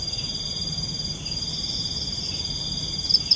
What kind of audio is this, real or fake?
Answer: real